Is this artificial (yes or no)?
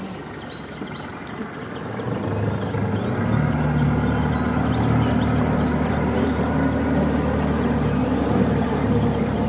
no